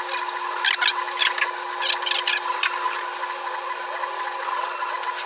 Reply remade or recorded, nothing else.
recorded